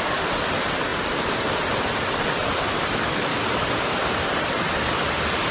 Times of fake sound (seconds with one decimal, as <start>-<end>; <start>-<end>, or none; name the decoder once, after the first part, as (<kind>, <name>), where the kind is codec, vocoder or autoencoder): 0.9-4.2 (vocoder, BigVGAN v2)